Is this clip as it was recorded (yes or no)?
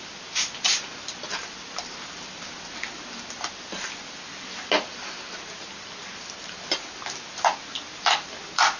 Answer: yes